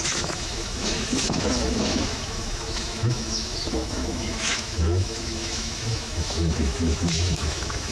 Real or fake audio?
fake